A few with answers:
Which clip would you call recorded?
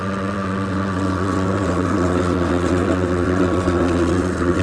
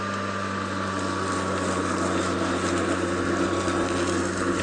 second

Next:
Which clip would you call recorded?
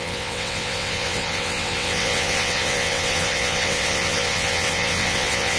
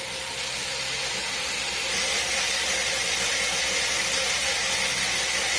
second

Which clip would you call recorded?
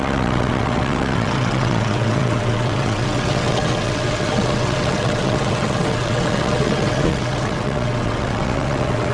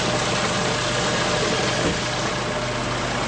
second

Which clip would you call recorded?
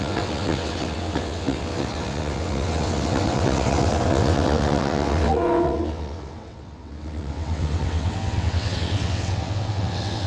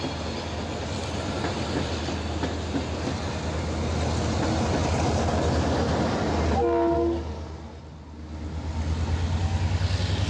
second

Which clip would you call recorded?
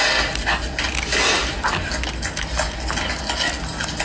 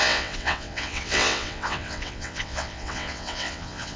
first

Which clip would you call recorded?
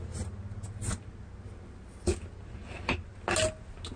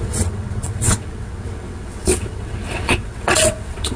first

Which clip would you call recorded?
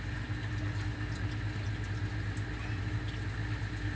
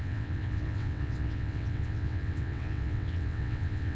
first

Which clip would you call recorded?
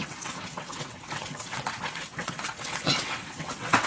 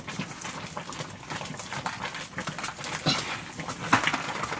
second